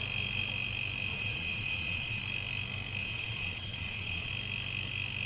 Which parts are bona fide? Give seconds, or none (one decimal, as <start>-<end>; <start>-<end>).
0.0-1.1; 2.2-3.0; 4.3-5.3

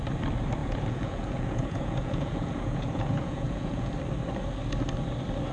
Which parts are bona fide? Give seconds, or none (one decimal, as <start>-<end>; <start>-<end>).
0.0-0.6; 3.9-5.5

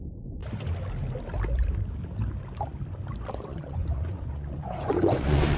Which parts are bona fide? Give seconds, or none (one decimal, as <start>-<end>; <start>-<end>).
0.4-3.3

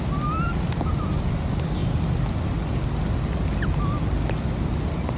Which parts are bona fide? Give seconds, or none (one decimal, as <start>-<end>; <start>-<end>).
0.0-5.2

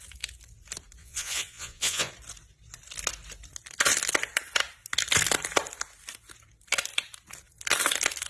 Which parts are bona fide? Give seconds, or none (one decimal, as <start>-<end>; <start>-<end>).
0.0-1.0; 2.1-8.3

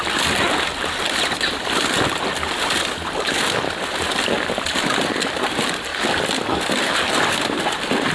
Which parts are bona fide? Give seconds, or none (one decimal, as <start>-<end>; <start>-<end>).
0.0-8.1

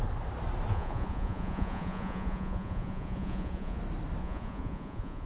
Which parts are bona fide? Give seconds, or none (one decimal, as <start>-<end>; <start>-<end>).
0.0-0.7; 3.8-4.2